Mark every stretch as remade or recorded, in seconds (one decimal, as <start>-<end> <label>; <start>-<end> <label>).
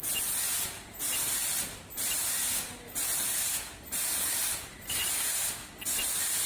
0.0-6.5 recorded